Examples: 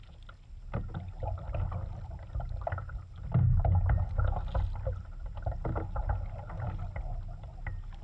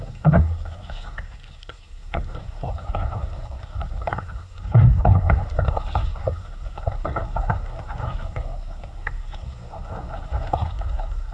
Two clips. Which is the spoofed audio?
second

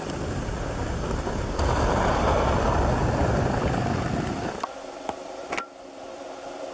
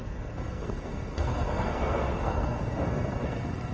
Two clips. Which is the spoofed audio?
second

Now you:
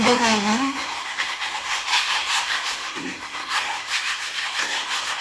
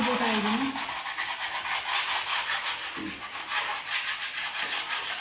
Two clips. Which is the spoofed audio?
first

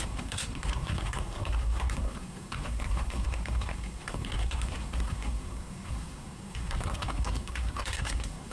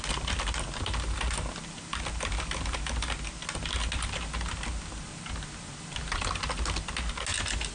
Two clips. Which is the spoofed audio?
first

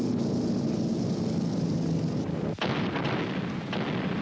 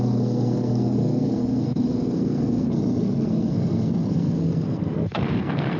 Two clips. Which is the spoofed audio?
second